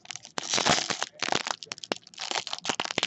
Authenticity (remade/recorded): recorded